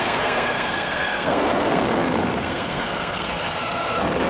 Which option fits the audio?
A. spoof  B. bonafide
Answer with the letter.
A